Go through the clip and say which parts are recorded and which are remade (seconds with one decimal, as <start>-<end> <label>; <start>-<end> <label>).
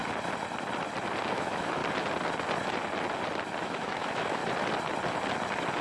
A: 0.0-1.3 recorded; 1.3-1.8 remade; 1.8-3.6 recorded; 3.6-4.4 remade; 4.4-5.8 recorded